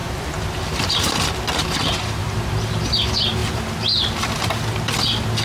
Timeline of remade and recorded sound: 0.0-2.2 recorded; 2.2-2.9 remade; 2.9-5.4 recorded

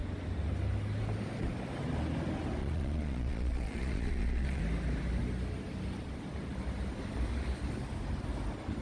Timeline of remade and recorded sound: 0.0-2.6 recorded; 2.6-4.6 remade; 4.6-8.8 recorded

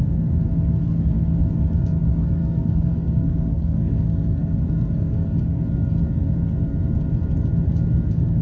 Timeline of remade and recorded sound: 0.0-2.4 recorded; 2.4-5.6 remade; 5.6-8.4 recorded

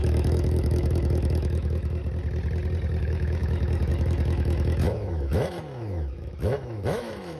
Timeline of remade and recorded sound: 0.0-2.0 remade; 2.0-3.0 recorded; 3.0-7.4 remade

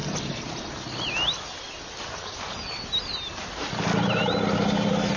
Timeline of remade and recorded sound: 0.0-5.2 recorded